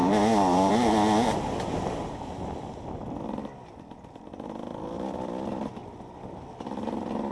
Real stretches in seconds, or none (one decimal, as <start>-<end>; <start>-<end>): 0.7-7.3